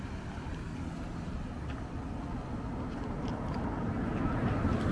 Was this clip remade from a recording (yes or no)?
no